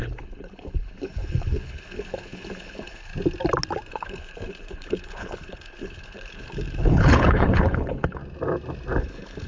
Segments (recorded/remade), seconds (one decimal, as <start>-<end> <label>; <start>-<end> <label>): 0.0-3.1 remade; 3.1-3.9 recorded; 3.9-8.2 remade; 8.2-9.0 recorded; 9.0-9.5 remade